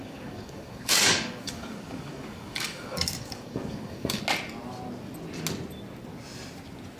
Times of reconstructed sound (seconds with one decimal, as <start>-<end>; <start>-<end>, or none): 0.0-4.2